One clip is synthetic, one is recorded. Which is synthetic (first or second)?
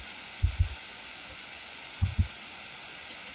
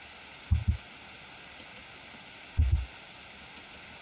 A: first